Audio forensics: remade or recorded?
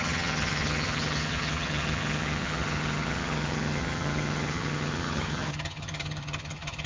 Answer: remade